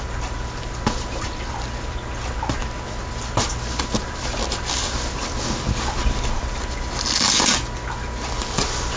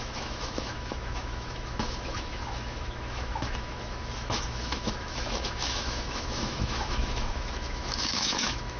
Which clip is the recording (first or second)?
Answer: first